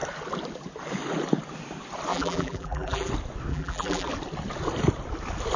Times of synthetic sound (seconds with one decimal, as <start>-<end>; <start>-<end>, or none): 2.1-3.1; 3.5-4.1